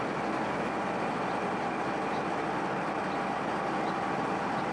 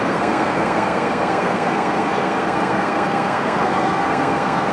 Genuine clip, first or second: first